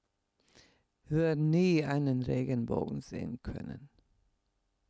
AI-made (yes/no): no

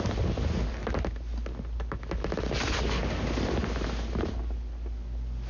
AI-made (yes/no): no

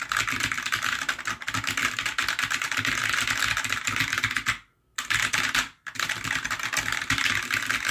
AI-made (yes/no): no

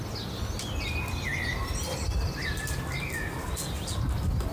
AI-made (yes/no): no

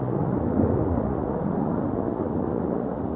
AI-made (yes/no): yes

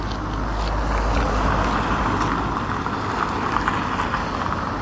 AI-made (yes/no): no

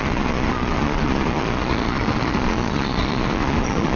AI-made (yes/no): yes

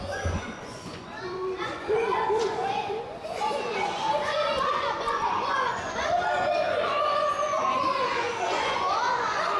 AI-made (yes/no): yes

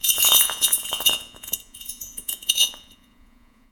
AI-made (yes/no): yes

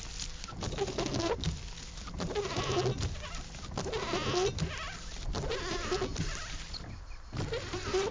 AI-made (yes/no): no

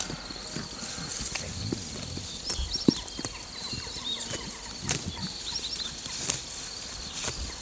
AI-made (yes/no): no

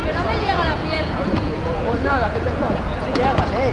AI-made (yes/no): yes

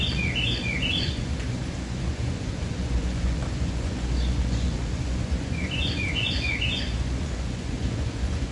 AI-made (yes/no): yes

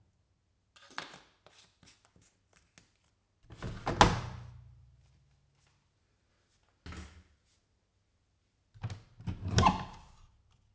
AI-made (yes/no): no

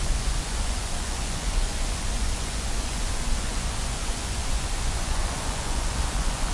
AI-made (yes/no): yes